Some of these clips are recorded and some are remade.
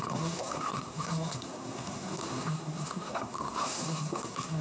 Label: remade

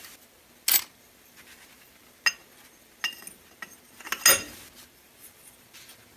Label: recorded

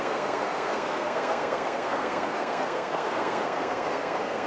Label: remade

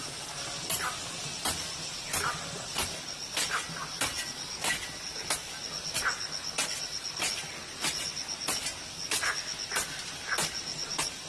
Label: recorded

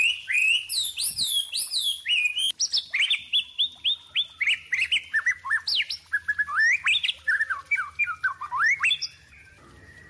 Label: recorded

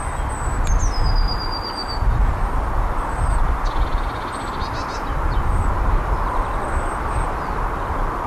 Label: recorded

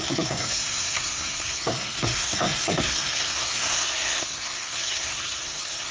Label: remade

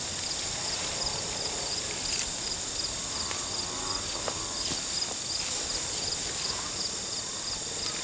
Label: recorded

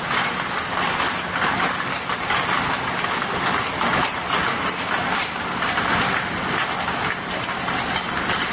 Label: recorded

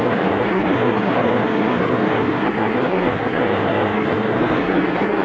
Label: remade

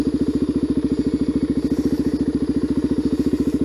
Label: recorded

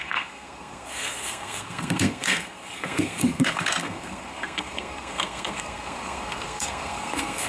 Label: remade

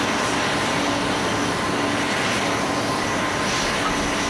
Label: recorded